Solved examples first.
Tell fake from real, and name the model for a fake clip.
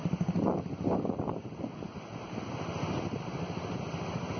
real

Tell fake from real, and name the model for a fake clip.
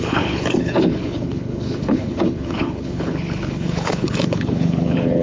fake, codec, HILCodec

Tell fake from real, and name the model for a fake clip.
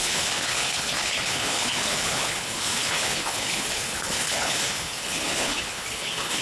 fake, codec, HILCodec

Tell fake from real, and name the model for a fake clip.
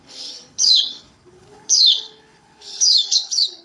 fake, codec, HILCodec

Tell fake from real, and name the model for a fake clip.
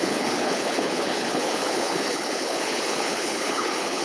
fake, codec, HILCodec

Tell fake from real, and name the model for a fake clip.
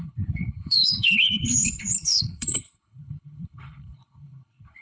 fake, codec, HILCodec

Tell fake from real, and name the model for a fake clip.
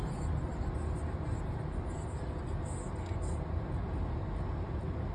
real